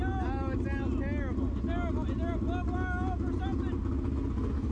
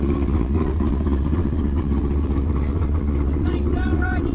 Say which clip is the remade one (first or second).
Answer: second